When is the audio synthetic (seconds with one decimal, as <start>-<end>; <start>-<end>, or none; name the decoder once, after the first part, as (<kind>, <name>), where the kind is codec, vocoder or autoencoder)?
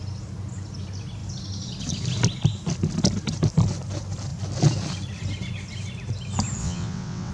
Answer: 6.6-7.3 (vocoder, WaveNeXt)